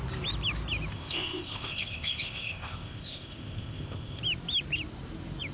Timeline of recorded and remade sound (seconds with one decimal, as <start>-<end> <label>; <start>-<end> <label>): 0.0-0.9 recorded; 0.9-4.2 remade; 4.2-5.5 recorded